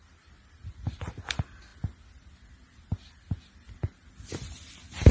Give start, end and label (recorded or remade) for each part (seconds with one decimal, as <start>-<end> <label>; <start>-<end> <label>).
0.0-5.1 recorded